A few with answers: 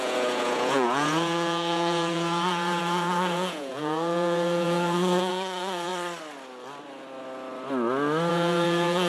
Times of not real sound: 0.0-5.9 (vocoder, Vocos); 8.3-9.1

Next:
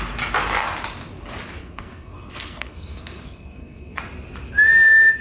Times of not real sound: 1.6-4.0 (codec, SNAC)